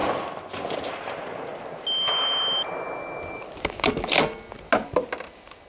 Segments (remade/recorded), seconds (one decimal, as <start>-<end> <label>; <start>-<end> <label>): 0.0-5.7 recorded

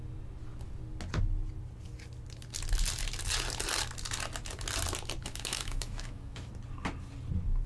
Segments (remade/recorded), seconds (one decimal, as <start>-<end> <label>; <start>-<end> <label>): 0.0-5.2 recorded; 5.2-6.5 remade; 6.5-7.7 recorded